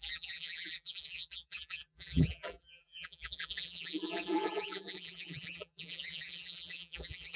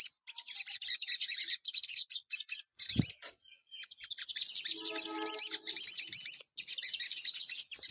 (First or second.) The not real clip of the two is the first